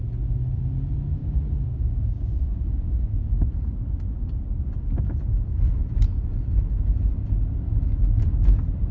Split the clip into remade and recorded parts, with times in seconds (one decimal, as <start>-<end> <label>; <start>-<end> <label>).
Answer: 0.0-1.2 recorded; 1.2-3.5 remade; 3.5-8.9 recorded